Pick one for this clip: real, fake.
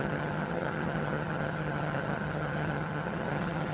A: fake